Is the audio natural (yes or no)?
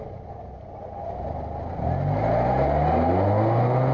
yes